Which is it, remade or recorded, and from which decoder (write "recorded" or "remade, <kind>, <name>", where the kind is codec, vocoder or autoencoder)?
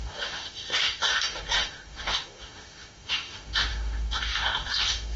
remade, autoencoder, DAC-VAE